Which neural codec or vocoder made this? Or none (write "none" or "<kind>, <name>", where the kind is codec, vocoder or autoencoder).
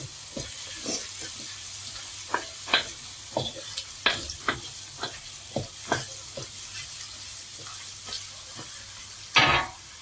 none